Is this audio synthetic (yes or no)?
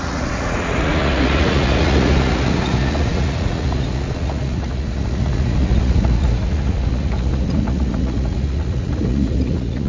yes